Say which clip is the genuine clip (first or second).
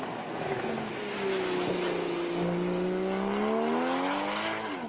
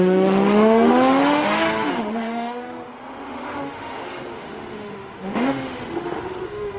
first